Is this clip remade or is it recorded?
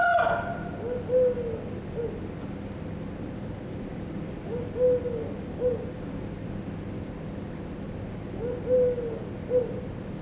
recorded